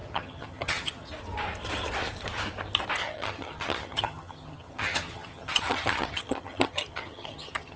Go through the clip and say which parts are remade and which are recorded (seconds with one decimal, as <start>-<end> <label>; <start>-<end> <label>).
0.0-1.1 remade; 1.1-3.0 recorded; 3.0-7.8 remade